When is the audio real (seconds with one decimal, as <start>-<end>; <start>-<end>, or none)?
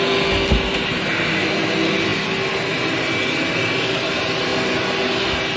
0.0-5.6